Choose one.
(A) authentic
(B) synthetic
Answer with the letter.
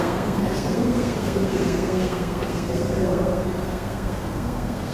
B